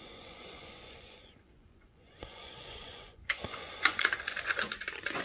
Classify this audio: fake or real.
fake